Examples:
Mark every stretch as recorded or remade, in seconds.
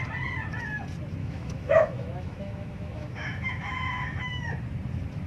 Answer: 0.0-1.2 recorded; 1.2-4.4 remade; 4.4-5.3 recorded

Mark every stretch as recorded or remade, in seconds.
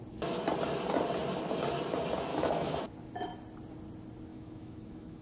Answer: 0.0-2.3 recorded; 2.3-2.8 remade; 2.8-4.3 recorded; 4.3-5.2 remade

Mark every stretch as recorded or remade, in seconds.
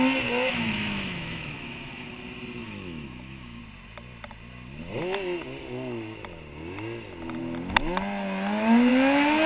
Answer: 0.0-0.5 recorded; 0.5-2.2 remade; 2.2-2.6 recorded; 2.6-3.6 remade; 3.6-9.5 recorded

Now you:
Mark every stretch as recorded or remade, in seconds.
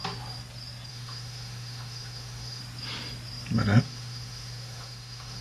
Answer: 0.0-0.9 recorded; 0.9-2.6 remade; 2.6-3.8 recorded; 3.8-5.4 remade